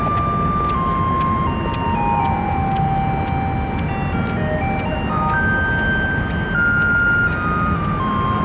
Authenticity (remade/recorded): recorded